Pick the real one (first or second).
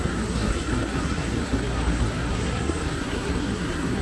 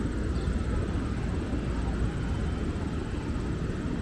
second